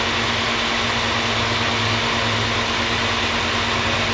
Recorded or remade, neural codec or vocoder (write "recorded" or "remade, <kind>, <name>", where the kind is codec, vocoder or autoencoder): recorded